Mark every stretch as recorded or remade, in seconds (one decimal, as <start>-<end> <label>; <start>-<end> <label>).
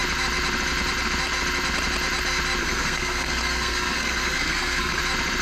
0.0-2.6 recorded; 2.6-5.0 remade; 5.0-5.4 recorded